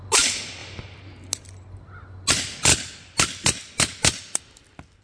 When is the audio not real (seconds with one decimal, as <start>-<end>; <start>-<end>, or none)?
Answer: none